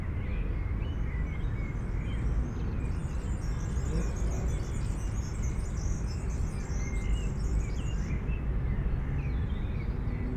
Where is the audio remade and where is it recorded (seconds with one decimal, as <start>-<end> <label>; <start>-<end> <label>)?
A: 0.0-3.0 recorded; 3.0-3.7 remade; 3.7-10.4 recorded